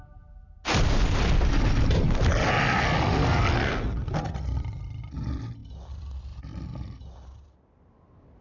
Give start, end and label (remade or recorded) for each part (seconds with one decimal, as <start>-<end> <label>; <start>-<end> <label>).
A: 0.0-8.4 recorded